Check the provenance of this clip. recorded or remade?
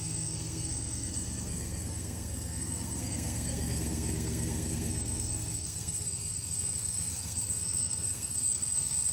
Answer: remade